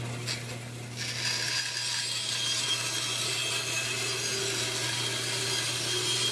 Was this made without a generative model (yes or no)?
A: yes